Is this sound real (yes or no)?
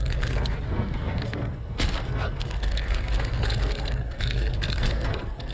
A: no